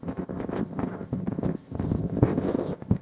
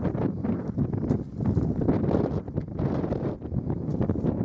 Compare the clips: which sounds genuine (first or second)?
second